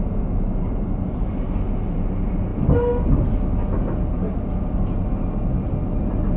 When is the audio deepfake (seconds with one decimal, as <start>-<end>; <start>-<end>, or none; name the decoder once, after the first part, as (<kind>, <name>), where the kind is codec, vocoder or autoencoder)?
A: none